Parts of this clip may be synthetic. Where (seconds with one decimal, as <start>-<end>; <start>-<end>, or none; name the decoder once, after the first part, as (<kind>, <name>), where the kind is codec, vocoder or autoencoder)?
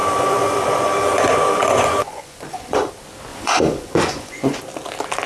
0.0-2.9 (vocoder, Vocos); 3.3-4.6